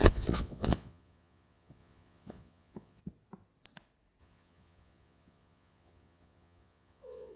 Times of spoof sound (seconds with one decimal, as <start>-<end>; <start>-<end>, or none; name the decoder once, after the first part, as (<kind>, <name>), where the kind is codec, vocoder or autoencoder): 0.0-3.0 (vocoder, Vocos); 4.2-7.4